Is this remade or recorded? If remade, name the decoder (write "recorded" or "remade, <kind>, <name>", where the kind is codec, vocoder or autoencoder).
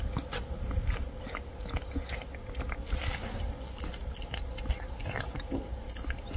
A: recorded